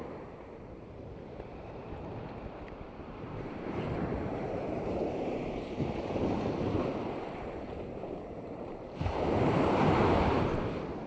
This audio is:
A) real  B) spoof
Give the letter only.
B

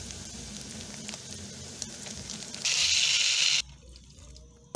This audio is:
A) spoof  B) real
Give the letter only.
B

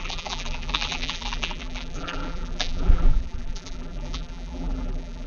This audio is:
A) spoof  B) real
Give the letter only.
A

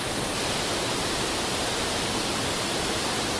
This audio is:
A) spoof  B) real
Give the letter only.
B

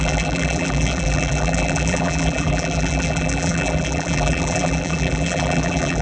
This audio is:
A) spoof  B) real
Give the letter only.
A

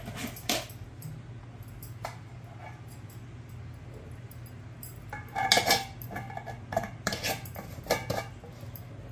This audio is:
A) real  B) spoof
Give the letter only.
A